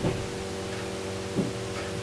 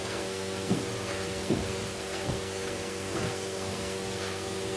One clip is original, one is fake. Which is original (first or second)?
first